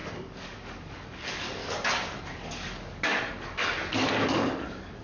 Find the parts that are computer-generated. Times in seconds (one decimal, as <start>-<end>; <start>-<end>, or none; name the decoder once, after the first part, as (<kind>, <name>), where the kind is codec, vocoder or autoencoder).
0.0-1.6 (codec, DAC); 2.2-5.0

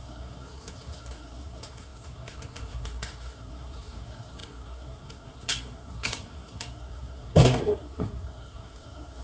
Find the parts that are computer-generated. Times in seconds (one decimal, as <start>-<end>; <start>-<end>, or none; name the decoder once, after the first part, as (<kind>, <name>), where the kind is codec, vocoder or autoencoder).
0.0-9.2 (codec, SNAC)

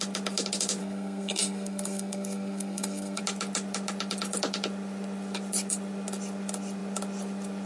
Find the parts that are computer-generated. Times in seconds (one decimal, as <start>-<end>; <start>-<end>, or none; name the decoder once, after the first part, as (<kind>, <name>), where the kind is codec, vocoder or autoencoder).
0.8-3.2 (codec, SNAC)

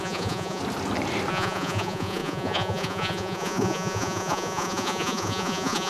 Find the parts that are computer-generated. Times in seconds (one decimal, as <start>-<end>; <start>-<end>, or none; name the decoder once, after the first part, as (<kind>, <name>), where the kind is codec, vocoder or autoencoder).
0.0-0.6 (vocoder, Vocos); 1.3-5.9

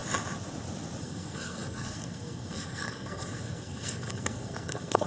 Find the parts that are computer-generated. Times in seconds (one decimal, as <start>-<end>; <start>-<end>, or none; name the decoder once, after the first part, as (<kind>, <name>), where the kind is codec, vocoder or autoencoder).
1.0-5.1 (codec, SNAC)

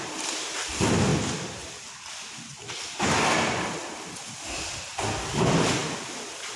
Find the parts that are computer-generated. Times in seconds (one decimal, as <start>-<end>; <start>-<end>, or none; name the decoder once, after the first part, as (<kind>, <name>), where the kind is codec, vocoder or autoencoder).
0.0-5.8 (vocoder, BigVGAN v2)

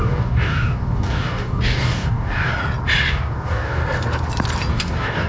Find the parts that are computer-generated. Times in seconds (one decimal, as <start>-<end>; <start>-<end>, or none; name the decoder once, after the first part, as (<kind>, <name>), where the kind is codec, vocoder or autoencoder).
0.0-2.5 (codec, DAC); 3.1-3.8; 4.7-5.3

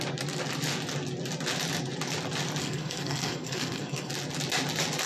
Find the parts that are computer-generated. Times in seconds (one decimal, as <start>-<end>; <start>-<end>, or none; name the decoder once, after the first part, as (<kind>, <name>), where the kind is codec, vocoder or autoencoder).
2.6-4.1 (codec, SNAC)